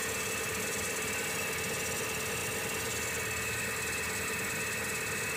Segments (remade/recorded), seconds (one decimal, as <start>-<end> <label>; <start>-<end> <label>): 0.0-5.4 recorded